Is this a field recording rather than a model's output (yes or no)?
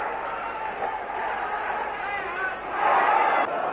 yes